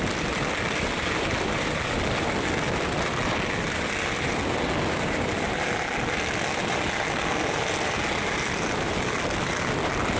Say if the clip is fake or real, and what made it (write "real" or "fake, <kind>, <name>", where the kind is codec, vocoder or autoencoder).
real